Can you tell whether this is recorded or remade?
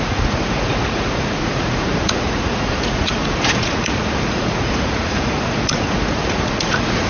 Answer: remade